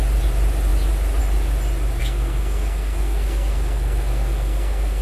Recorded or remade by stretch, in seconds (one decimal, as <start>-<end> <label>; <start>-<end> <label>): 0.0-2.0 recorded; 2.0-5.0 remade